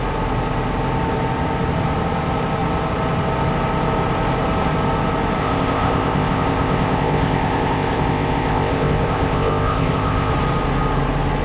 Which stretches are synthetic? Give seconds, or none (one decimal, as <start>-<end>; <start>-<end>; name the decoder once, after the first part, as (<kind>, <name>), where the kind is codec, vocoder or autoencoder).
5.4-10.3 (codec, ZipCodec)